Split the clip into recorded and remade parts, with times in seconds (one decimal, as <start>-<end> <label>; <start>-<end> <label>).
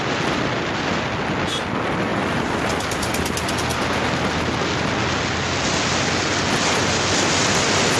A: 0.0-8.0 recorded